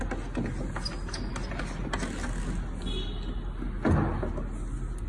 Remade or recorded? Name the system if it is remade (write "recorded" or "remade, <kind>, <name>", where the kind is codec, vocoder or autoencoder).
recorded